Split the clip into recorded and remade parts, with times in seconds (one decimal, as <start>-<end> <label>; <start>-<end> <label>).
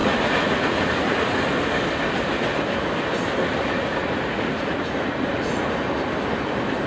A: 0.0-1.6 remade; 1.6-3.4 recorded; 3.4-5.7 remade; 5.7-6.9 recorded